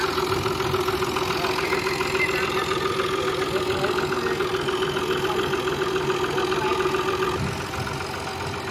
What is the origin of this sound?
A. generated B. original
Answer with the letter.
B